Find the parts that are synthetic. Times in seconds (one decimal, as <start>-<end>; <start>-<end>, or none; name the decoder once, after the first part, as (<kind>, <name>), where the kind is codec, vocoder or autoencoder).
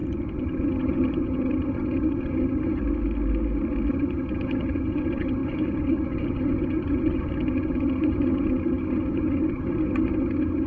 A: 0.0-2.8 (vocoder, HiFi-GAN); 3.9-10.7